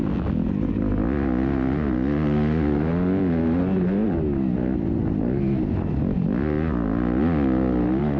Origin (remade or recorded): recorded